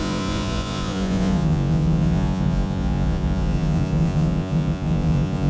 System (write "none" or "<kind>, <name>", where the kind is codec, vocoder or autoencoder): vocoder, Vocos